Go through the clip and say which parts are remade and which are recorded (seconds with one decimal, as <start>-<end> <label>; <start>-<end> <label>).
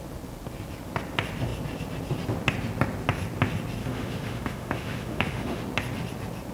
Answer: 0.0-3.8 recorded; 3.8-5.6 remade; 5.6-6.5 recorded